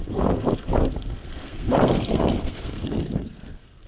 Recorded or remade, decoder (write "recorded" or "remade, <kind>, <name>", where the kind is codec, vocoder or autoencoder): remade, codec, SNAC